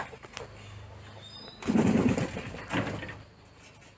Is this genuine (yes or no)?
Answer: yes